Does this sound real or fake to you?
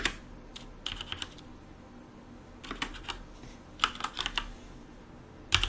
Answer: real